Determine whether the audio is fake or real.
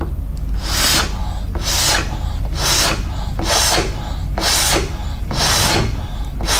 real